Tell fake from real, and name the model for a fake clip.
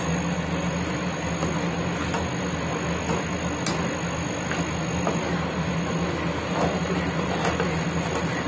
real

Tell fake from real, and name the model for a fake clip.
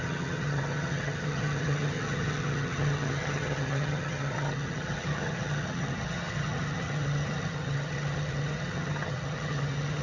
fake, vocoder, HiFi-GAN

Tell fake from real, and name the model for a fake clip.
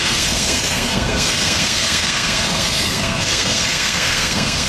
fake, codec, SNAC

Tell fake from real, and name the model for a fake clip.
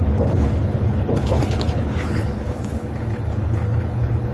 fake, codec, HILCodec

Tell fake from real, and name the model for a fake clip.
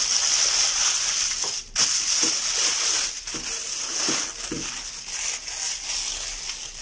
real